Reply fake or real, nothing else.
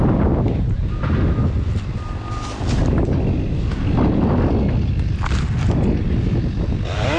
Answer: real